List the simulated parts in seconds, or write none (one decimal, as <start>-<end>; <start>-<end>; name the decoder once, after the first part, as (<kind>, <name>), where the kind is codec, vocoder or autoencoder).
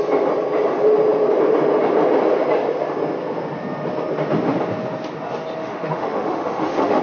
5.6-7.0 (autoencoder, DAC-VAE)